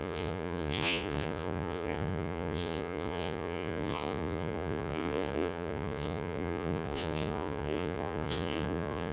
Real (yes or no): no